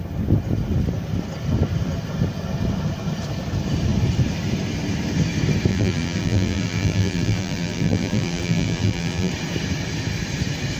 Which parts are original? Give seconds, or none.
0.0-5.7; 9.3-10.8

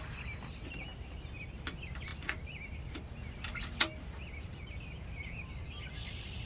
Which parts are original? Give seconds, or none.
0.0-2.1; 6.0-6.5